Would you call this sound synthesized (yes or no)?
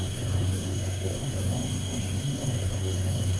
yes